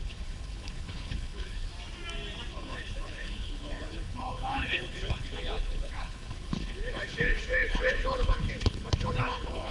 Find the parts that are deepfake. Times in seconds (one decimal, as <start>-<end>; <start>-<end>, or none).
0.0-1.7; 2.5-9.7